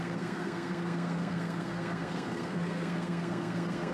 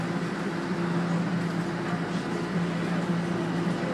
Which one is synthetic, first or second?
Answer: first